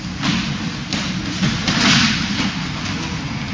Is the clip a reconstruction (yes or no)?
no